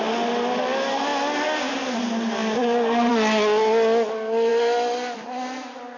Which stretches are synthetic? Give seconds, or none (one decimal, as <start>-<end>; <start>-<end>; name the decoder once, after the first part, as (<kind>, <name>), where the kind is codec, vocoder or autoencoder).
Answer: none